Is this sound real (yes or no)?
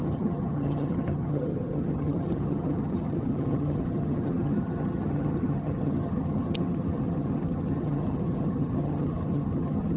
no